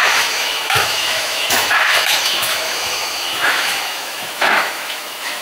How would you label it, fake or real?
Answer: fake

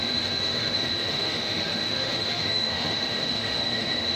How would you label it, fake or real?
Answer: fake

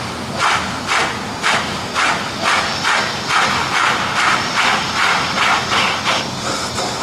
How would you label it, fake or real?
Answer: real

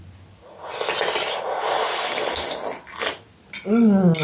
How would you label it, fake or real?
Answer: real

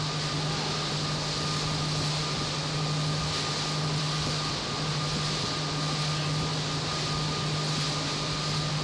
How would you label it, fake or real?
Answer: real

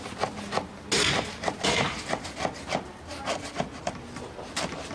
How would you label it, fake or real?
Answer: real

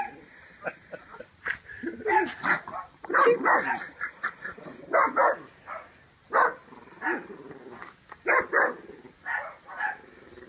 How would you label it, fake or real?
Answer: real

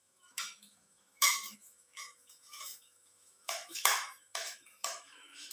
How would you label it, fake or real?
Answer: fake